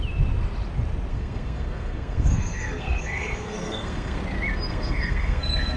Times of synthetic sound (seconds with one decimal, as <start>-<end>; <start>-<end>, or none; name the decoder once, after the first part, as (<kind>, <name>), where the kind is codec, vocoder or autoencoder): 1.1-4.2 (codec, SNAC); 4.7-5.8